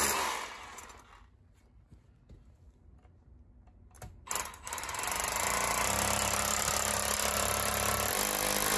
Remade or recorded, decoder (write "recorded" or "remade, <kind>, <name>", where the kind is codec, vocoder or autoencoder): recorded